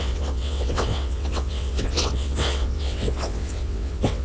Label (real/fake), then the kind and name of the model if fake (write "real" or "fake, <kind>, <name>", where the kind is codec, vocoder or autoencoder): fake, vocoder, WaveNeXt